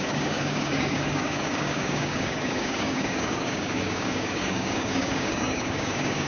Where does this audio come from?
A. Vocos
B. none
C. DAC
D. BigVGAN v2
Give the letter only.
C